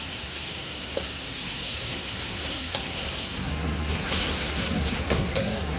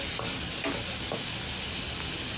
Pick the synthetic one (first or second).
first